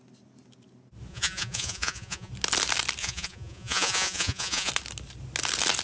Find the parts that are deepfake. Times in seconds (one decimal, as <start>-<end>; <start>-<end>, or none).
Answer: 1.1-2.3; 3.0-4.7